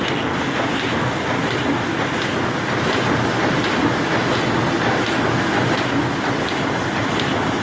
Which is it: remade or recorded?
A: recorded